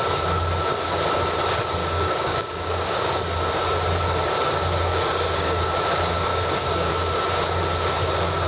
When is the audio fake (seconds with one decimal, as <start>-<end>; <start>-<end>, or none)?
1.8-3.1; 4.9-5.6; 6.3-6.9